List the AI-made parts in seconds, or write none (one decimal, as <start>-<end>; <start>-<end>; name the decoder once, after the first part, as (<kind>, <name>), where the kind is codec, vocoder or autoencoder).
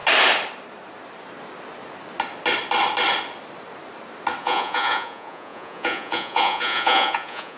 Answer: 4.4-7.6 (vocoder, Vocos)